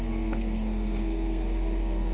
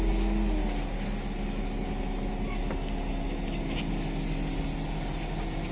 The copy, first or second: first